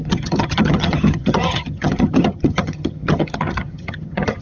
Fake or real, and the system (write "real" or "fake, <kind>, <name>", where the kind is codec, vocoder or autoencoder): fake, vocoder, HiFi-GAN